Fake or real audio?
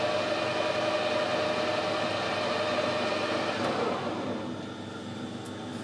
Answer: real